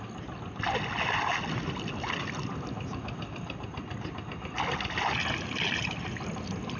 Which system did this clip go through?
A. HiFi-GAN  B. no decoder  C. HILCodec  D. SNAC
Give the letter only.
B